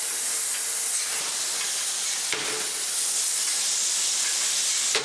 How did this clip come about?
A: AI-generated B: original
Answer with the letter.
B